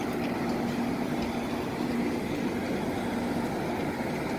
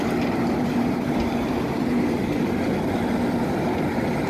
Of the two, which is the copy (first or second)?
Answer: second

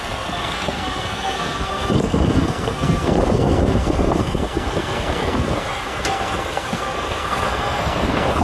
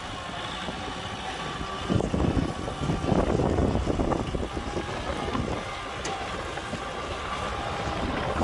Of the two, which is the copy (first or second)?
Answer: first